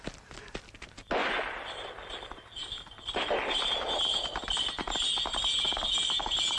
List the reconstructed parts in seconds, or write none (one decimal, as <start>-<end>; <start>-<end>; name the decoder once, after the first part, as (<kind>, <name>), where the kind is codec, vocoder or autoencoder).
1.2-2.0 (vocoder, BigVGAN v2)